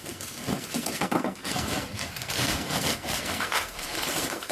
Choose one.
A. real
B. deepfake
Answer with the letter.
B